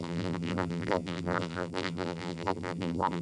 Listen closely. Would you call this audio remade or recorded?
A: remade